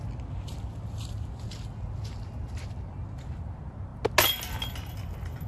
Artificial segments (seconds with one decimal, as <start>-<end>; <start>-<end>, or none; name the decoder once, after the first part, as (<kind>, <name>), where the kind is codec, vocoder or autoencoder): none